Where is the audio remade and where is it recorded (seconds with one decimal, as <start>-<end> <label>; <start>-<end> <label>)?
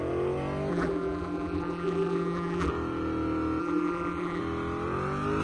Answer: 0.0-0.7 recorded; 0.7-2.7 remade; 2.7-3.6 recorded; 3.6-4.4 remade; 4.4-5.4 recorded